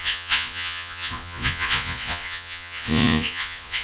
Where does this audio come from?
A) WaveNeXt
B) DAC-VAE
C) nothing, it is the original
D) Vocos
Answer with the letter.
D